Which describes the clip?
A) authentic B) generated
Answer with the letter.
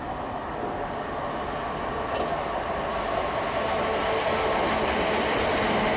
A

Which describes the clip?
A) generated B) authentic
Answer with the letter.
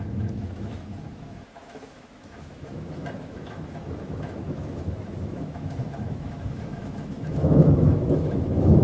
A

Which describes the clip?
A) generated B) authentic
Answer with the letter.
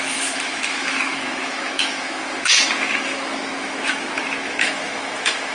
A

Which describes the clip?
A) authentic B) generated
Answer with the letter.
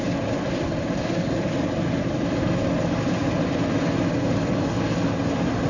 A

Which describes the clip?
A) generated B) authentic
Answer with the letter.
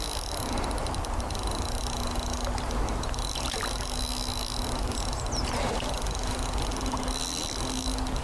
B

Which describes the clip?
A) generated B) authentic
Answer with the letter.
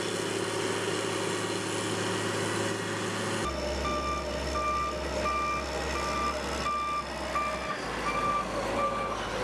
B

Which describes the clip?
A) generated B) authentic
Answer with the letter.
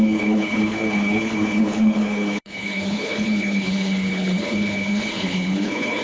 A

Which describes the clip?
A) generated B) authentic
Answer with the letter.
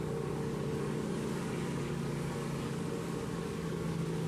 A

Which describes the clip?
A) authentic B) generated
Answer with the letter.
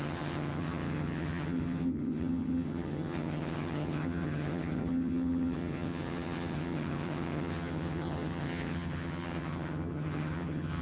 B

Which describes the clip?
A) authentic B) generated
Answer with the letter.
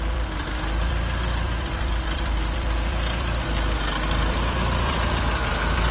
B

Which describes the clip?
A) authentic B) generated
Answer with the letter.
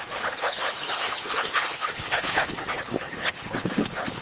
B